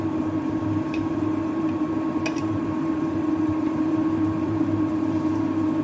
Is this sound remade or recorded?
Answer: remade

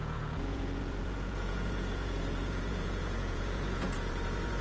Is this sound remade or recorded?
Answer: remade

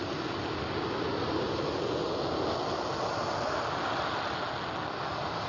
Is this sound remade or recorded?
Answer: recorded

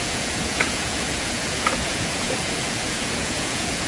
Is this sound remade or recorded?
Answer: remade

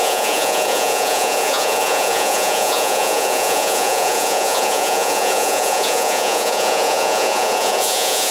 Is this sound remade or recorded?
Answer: remade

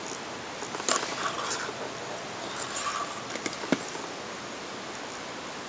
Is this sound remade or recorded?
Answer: recorded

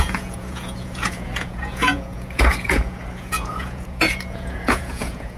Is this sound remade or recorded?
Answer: remade